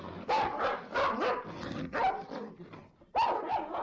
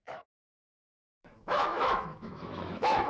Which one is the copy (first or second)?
second